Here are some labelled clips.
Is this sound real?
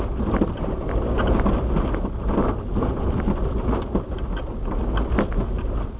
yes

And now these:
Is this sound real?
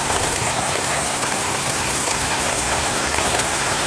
no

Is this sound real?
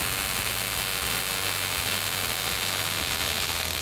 yes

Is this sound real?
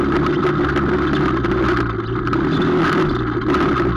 yes